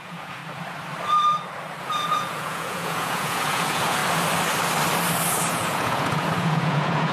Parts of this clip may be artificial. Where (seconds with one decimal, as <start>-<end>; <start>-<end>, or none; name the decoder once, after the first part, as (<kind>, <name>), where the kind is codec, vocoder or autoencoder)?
0.0-0.4 (vocoder, Vocos); 1.8-4.0; 5.5-7.1